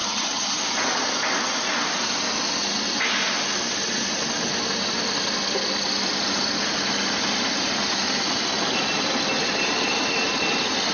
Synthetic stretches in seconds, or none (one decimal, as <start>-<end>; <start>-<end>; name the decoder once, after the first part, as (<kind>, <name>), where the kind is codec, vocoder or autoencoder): 0.0-0.6 (vocoder, HiFi-GAN)